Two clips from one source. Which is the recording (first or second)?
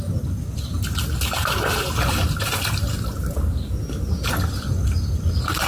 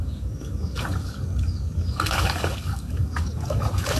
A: first